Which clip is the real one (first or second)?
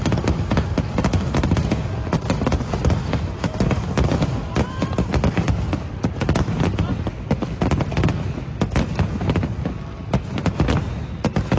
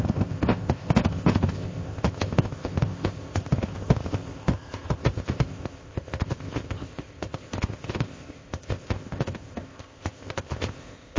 first